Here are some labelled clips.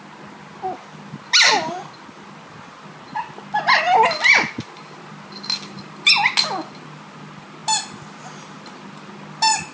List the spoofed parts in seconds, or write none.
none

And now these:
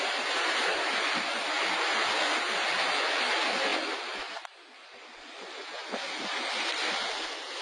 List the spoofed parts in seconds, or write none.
none

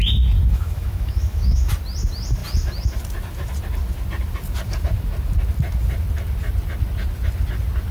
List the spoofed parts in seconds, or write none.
0.5-1.7

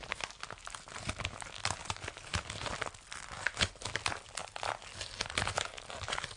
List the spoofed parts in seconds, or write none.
none

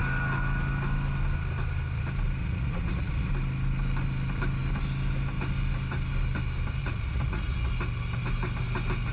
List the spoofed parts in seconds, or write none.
2.4-3.3; 6.8-7.7